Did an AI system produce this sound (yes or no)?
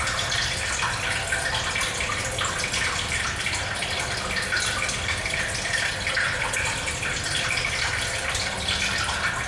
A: no